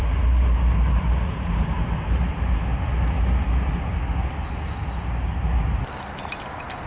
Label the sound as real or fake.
real